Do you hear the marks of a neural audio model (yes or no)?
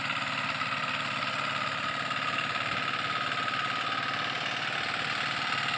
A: no